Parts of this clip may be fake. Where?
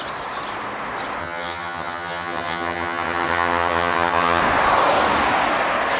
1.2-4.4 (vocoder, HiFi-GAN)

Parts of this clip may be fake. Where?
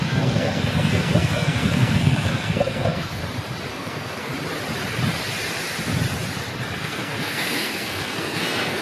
0.0-3.2 (codec, SNAC); 3.7-4.3; 6.8-8.8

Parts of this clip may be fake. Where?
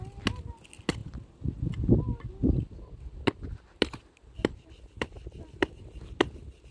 none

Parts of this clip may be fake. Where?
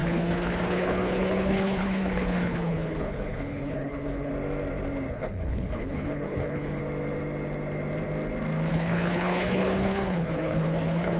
0.0-4.3 (codec, HILCodec); 5.1-6.8; 8.7-11.2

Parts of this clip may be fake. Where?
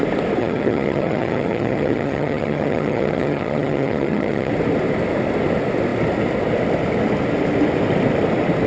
0.4-4.5 (vocoder, HiFi-GAN)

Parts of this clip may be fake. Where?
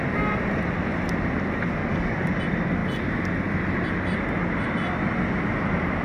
1.8-2.4 (codec, DAC)